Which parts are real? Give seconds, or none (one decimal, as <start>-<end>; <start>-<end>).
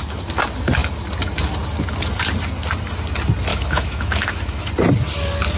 0.0-3.5; 4.7-5.6